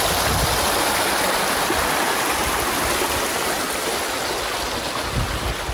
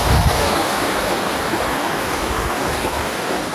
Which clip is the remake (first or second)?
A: second